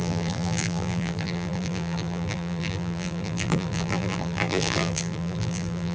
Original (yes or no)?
no